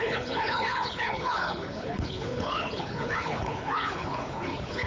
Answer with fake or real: fake